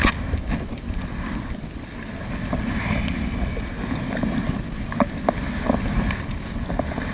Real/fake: real